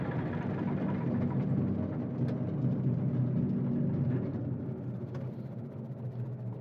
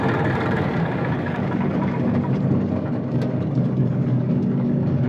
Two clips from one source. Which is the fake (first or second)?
second